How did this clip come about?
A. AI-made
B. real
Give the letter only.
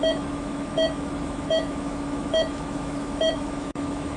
A